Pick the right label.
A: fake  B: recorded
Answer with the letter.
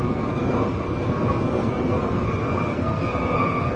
A